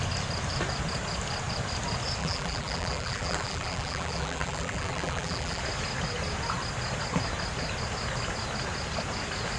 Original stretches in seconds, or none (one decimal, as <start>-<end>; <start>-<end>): 0.0-2.2; 5.6-9.6